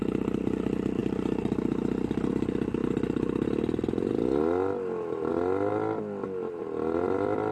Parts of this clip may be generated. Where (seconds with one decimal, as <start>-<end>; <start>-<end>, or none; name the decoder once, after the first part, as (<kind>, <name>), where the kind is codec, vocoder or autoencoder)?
none